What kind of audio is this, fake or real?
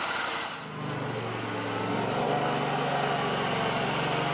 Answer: real